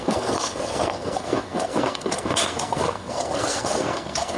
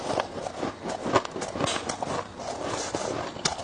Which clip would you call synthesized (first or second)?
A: first